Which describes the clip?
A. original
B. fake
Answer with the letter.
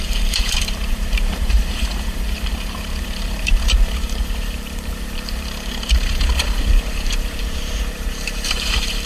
B